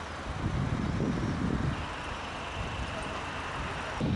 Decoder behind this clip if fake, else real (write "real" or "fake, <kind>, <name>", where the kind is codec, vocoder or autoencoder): real